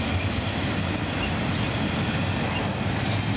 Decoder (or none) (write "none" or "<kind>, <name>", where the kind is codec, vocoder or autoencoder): none